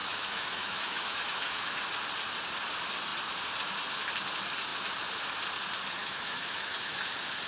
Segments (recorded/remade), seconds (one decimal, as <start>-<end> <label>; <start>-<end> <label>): 0.0-1.8 remade; 1.8-6.0 recorded; 6.0-7.0 remade; 7.0-7.5 recorded